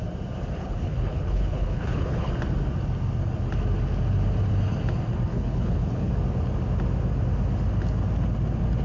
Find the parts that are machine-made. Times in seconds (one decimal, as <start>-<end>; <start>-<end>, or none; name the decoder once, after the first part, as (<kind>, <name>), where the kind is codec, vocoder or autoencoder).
0.6-2.3 (codec, HILCodec); 5.3-6.1

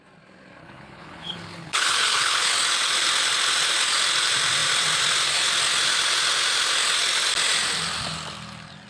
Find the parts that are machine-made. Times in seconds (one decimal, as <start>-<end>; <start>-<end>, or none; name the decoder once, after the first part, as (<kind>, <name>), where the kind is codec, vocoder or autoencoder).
0.6-2.5 (codec, HILCodec)